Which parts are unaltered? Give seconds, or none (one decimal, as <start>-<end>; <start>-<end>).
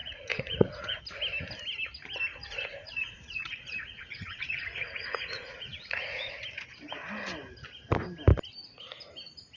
1.0-2.3; 6.3-9.6